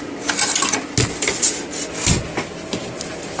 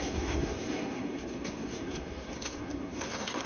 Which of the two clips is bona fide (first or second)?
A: first